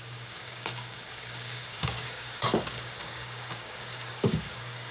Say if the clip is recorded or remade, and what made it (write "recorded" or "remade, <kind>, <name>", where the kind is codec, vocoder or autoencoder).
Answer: remade, codec, DAC